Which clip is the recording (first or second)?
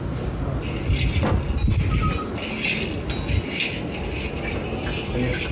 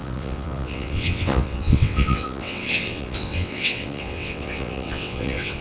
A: first